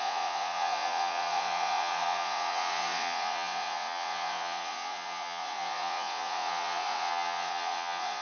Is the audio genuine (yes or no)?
no